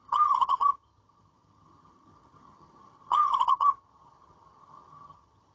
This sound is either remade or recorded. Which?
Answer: remade